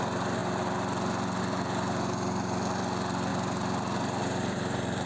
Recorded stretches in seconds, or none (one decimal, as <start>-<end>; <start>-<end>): 0.0-3.3